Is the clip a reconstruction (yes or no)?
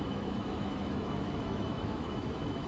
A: yes